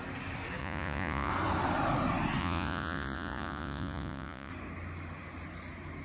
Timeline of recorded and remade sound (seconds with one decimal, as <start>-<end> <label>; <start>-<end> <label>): 0.0-0.6 recorded; 0.6-1.3 remade; 1.3-2.4 recorded; 2.4-4.5 remade; 4.5-6.0 recorded